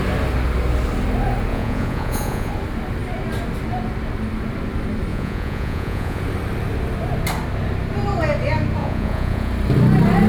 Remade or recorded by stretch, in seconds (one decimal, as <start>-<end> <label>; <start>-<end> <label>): 0.0-1.5 recorded; 1.5-2.5 remade; 2.5-5.1 recorded; 5.1-6.2 remade; 6.2-8.8 recorded; 8.8-9.5 remade; 9.5-10.3 recorded